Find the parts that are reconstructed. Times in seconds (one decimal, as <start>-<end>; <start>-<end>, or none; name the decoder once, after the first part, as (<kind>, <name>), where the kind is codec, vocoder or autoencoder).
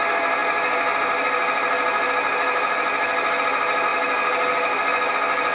none